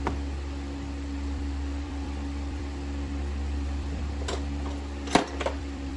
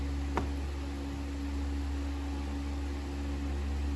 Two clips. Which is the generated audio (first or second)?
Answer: first